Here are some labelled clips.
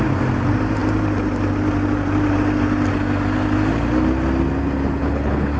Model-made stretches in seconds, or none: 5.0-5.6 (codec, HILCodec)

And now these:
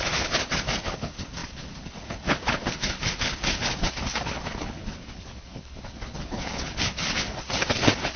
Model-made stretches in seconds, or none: 0.0-8.2 (codec, HILCodec)

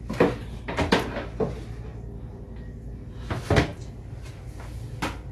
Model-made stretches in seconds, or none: none

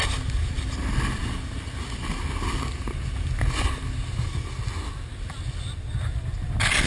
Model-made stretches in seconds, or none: none

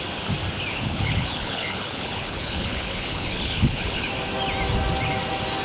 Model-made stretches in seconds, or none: 0.7-4.1 (codec, HILCodec)